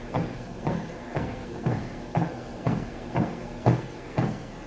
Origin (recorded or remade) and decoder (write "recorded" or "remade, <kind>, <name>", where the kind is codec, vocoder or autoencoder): remade, codec, SNAC